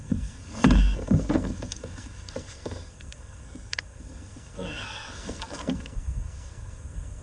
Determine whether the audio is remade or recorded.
remade